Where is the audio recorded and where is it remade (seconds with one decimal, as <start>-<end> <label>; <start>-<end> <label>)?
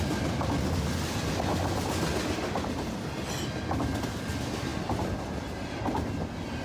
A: 0.0-6.6 recorded